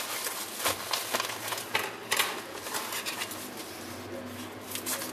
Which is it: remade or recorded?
recorded